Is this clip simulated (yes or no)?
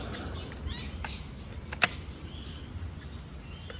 no